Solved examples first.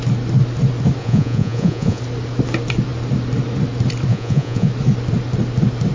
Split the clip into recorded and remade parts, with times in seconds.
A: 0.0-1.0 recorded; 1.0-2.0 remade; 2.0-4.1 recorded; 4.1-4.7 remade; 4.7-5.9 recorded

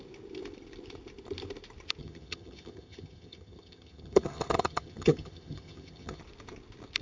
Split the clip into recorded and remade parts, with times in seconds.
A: 0.0-2.0 recorded; 2.0-6.2 remade; 6.2-7.0 recorded

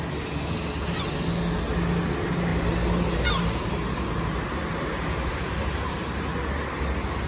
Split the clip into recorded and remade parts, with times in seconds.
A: 0.0-2.5 recorded; 2.5-6.8 remade; 6.8-7.3 recorded

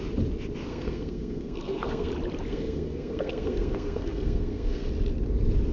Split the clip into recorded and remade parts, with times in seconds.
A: 0.0-0.7 recorded; 0.7-2.1 remade; 2.1-2.5 recorded; 2.5-4.9 remade; 4.9-5.7 recorded

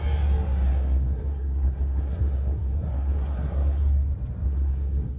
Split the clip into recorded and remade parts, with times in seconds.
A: 0.0-0.7 recorded; 0.7-3.8 remade; 3.8-4.4 recorded; 4.4-5.2 remade

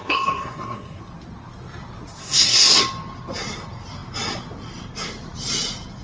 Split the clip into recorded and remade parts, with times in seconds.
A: 0.0-1.0 remade; 1.0-2.2 recorded; 2.2-2.8 remade; 2.8-6.0 recorded